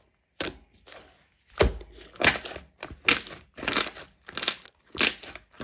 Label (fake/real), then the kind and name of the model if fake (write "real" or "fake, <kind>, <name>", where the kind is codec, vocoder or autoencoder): real